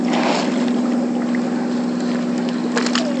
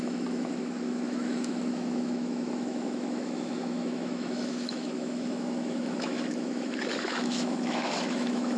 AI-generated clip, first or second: second